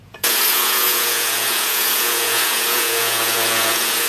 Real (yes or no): no